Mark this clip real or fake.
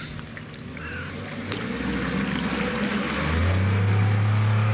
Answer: real